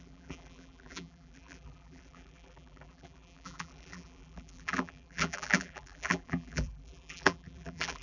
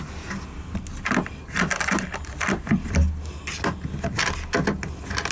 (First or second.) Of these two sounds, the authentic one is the second